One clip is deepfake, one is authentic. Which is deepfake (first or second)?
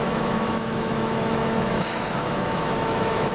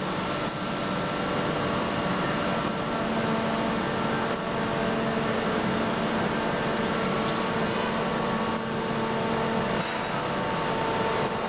first